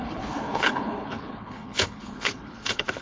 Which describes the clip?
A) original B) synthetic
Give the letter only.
B